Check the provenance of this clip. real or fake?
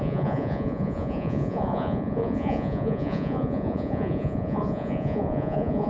fake